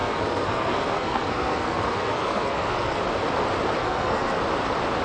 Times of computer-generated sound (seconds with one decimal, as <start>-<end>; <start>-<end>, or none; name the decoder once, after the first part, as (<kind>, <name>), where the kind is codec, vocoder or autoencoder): 0.0-3.0 (codec, SNAC); 3.8-4.4